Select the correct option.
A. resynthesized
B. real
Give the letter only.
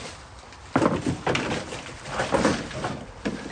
B